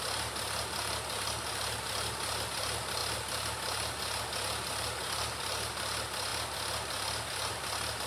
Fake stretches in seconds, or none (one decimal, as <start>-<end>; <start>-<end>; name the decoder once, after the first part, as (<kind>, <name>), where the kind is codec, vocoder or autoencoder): none